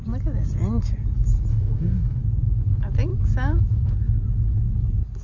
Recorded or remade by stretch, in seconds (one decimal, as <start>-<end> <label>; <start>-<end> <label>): 0.0-1.5 recorded; 1.5-2.2 remade; 2.2-5.2 recorded